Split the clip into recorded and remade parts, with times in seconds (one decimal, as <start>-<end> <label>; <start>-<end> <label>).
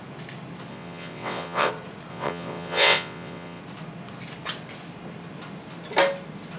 0.0-0.7 recorded; 0.7-1.7 remade; 1.7-2.1 recorded; 2.1-3.6 remade; 3.6-6.6 recorded